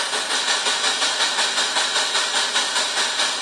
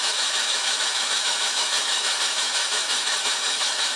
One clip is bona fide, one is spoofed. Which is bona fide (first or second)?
first